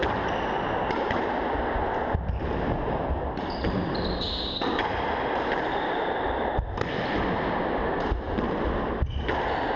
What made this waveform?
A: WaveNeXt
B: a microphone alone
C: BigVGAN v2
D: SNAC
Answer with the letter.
B